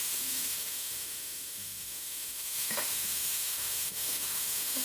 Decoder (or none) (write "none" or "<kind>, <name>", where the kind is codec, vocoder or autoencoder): autoencoder, DAC-VAE